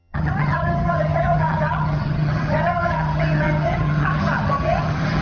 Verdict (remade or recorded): remade